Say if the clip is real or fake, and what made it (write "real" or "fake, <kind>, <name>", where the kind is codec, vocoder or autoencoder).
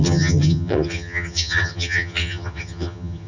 fake, vocoder, HiFi-GAN